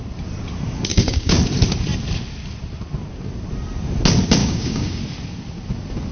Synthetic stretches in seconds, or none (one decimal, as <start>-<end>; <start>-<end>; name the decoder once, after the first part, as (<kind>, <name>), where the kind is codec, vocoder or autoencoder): 0.9-1.4 (codec, DAC); 4.4-5.0